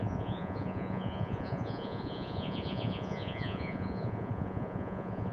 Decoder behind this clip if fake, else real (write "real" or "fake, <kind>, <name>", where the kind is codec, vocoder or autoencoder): fake, vocoder, Vocos